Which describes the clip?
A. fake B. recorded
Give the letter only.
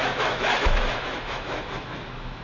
A